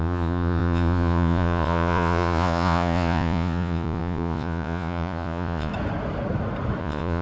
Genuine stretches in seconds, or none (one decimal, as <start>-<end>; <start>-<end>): 5.7-6.8